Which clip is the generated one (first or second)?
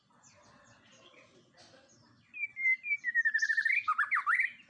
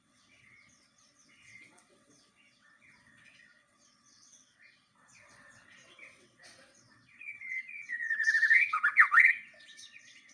second